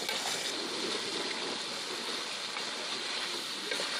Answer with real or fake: real